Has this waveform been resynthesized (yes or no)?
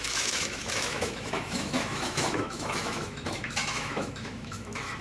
yes